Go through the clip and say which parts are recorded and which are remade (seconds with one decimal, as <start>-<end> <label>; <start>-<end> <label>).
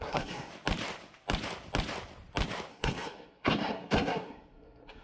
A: 0.0-0.5 remade; 0.5-2.7 recorded; 2.7-5.0 remade